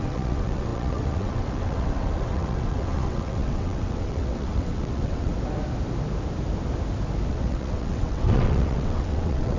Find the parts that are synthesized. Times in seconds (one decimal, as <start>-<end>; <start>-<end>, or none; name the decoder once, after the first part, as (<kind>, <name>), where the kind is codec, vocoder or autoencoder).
0.0-5.3 (vocoder, WaveNeXt); 7.3-9.6